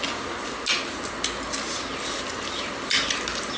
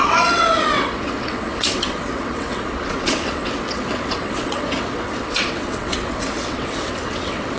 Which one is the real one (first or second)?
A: first